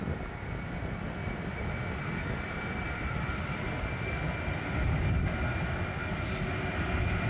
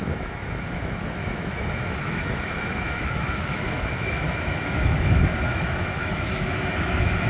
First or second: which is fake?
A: second